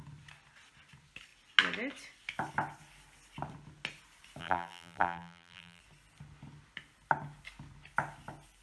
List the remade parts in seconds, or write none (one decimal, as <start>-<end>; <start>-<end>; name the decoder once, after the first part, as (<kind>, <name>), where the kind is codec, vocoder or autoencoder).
4.4-5.8 (vocoder, BigVGAN v2)